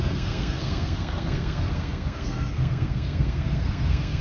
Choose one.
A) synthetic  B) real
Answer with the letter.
A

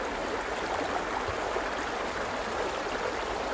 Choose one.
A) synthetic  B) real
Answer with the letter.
B